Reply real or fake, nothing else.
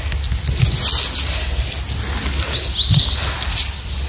real